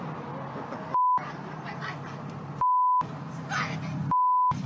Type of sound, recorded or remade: recorded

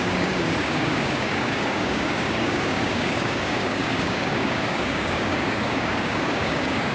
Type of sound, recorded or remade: remade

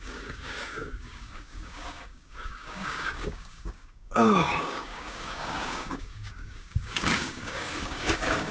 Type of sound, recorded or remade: remade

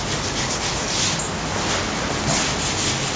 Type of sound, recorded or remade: recorded